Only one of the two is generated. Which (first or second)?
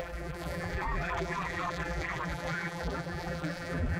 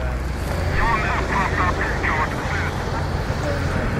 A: first